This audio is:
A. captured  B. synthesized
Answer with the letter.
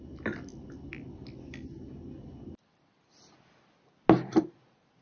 A